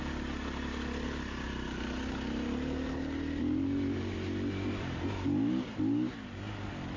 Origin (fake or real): real